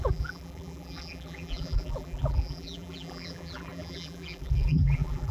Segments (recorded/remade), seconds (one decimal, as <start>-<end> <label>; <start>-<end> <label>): 0.0-5.3 remade